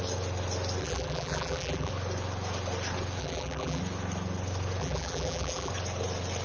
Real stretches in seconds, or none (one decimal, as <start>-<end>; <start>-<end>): 0.0-0.8; 1.9-3.2; 3.8-4.8; 5.7-6.4